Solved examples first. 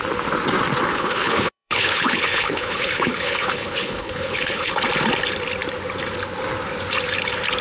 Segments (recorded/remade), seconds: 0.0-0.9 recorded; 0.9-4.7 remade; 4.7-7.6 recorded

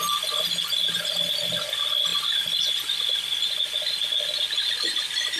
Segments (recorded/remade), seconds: 0.0-5.4 recorded

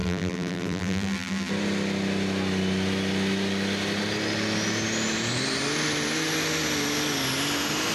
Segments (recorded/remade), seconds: 0.0-1.5 remade; 1.5-7.9 recorded

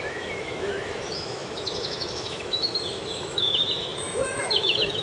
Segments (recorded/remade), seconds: 0.0-5.0 remade

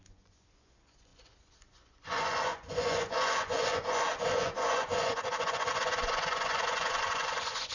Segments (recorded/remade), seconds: 0.0-7.7 remade

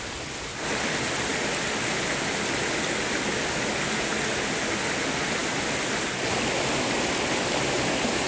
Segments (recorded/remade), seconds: 0.0-8.3 recorded